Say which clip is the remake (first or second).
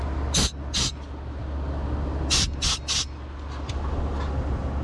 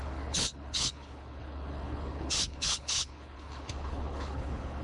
second